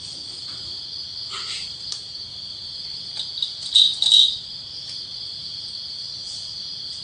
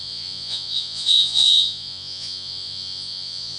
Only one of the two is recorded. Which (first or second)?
first